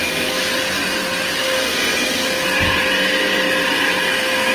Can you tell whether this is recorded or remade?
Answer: recorded